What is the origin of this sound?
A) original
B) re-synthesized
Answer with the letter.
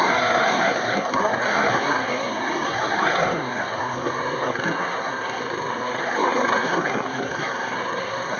B